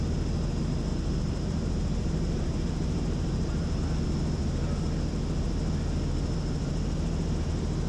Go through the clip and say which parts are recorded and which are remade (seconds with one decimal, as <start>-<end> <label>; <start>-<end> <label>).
0.0-0.9 recorded; 0.9-3.8 remade; 3.8-7.9 recorded